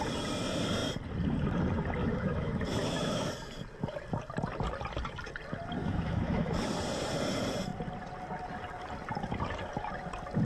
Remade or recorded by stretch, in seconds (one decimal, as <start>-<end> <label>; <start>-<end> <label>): 0.0-2.0 recorded; 2.0-3.3 remade; 3.3-5.8 recorded; 5.8-6.7 remade; 6.7-10.5 recorded